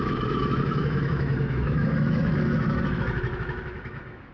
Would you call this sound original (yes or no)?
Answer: no